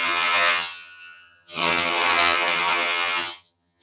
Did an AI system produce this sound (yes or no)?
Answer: yes